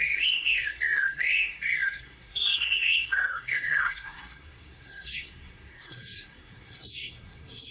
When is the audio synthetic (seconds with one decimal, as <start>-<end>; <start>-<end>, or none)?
0.0-7.7

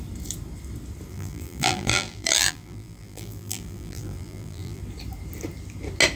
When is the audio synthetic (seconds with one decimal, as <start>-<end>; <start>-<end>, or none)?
1.1-4.8

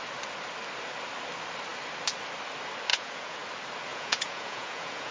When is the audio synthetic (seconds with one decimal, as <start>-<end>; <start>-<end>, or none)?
2.9-3.4; 3.9-5.1

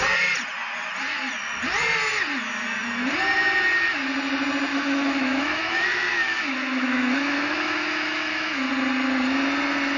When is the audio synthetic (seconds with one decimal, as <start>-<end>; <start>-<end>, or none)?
4.7-8.7